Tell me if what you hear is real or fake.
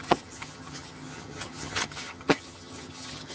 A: fake